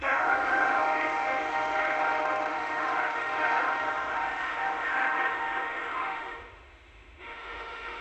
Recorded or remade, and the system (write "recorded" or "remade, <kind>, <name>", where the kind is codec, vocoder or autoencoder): remade, autoencoder, DAC-VAE